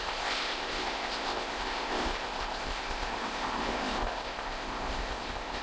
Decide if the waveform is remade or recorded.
remade